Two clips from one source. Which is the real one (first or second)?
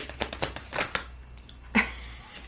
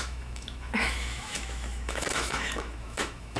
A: first